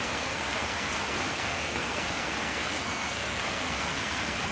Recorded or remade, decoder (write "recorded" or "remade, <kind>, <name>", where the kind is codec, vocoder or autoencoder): remade, codec, SNAC